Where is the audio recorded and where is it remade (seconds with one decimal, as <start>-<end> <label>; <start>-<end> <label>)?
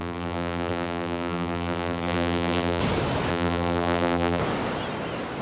0.0-2.8 remade; 2.8-3.3 recorded; 3.3-4.4 remade; 4.4-5.4 recorded